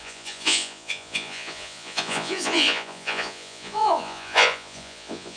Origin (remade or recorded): remade